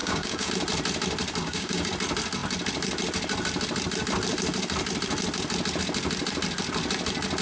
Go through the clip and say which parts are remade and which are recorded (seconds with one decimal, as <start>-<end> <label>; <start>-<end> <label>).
0.0-0.5 remade; 0.5-1.4 recorded; 1.4-1.9 remade; 1.9-7.4 recorded